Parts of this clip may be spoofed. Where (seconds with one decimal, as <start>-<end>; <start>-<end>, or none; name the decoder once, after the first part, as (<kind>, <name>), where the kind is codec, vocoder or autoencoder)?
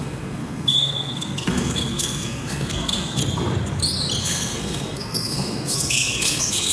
0.0-3.2 (codec, SNAC); 4.2-6.7